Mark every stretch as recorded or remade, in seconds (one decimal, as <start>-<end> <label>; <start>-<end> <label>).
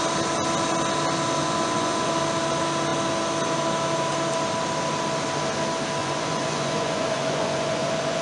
0.0-1.4 recorded; 1.4-2.1 remade; 2.1-6.0 recorded; 6.0-8.2 remade